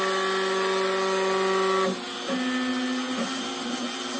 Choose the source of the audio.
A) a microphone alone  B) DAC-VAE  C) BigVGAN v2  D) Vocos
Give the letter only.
A